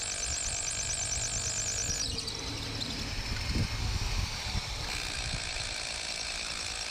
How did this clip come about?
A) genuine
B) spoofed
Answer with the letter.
A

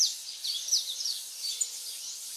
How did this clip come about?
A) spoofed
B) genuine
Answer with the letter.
B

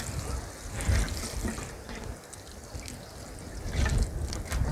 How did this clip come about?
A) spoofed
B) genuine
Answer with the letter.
B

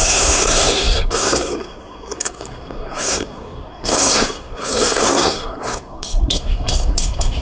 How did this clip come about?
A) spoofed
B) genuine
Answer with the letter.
A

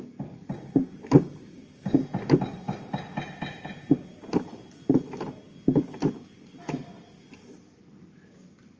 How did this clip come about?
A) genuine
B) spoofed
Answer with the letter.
A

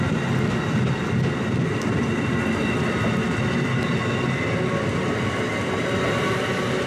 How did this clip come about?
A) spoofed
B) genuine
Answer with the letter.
B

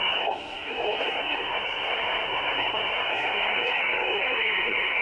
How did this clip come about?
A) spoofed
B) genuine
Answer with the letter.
A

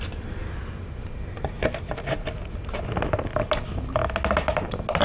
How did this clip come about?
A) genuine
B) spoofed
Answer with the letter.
A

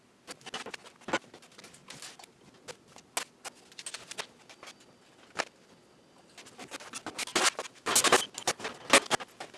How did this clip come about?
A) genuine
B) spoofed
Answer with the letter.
A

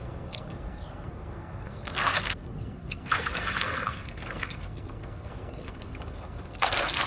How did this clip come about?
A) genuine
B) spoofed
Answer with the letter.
B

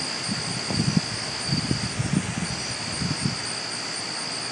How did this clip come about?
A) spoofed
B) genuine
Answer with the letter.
B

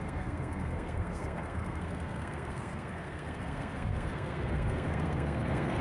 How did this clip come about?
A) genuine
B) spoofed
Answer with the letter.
B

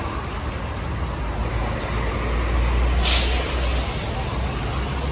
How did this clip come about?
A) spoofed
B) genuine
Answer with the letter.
B